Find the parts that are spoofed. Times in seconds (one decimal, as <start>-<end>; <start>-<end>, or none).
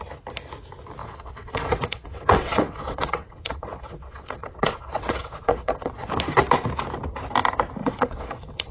1.0-6.1; 7.8-8.7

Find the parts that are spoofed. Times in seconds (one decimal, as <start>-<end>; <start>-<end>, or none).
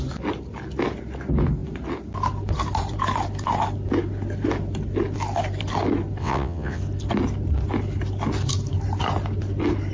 6.2-6.8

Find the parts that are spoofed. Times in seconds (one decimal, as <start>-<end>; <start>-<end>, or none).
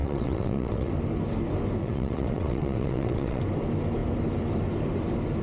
0.0-0.9; 1.8-3.4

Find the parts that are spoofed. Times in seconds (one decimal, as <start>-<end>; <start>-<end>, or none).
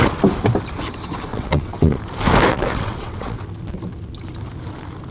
1.3-2.0; 2.5-3.4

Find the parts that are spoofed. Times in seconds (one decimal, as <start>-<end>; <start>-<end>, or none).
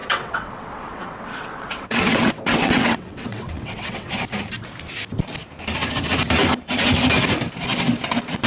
0.0-4.1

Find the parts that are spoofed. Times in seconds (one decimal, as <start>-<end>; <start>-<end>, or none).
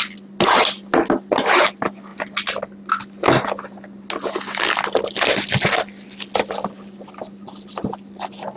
none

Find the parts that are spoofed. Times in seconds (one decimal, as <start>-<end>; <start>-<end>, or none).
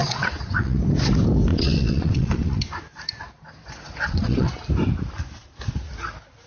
0.0-0.8; 1.5-2.6; 3.6-4.5